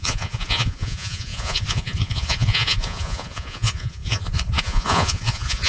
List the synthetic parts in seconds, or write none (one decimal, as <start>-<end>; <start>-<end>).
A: 0.0-5.7